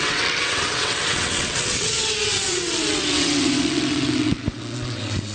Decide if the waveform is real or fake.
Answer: fake